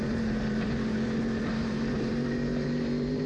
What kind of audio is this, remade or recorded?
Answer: remade